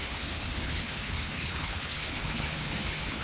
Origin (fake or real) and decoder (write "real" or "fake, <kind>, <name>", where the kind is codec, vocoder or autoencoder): fake, codec, HILCodec